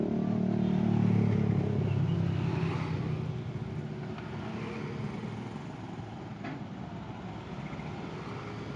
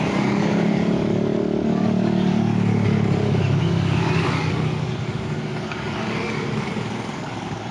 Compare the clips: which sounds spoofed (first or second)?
second